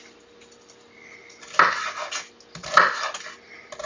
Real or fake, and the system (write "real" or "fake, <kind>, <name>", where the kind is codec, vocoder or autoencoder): real